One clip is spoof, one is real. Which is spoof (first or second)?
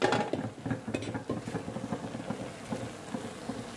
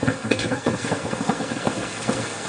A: second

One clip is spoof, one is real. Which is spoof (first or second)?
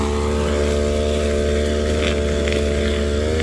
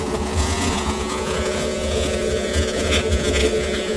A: second